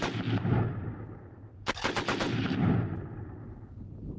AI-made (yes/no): no